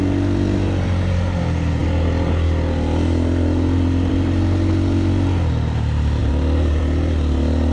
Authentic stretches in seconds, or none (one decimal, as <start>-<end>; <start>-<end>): 0.0-6.2; 6.8-7.7